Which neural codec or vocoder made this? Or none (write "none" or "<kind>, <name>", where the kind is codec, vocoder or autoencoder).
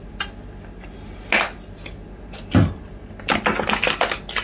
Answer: none